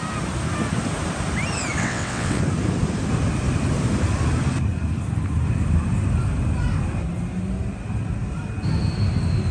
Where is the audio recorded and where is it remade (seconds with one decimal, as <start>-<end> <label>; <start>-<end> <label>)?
0.0-1.8 recorded; 1.8-2.4 remade; 2.4-9.5 recorded